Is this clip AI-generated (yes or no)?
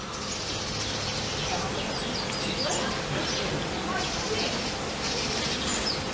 no